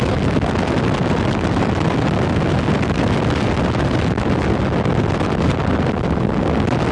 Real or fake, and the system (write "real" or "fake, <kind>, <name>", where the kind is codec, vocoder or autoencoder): real